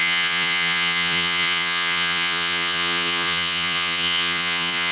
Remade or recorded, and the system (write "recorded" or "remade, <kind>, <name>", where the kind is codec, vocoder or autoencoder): remade, vocoder, Vocos